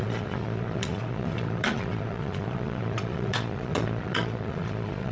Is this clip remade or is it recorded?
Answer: remade